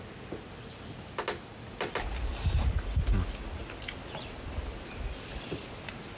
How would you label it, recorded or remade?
recorded